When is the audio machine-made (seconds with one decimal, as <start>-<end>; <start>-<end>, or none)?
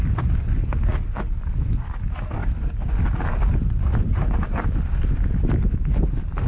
2.4-2.9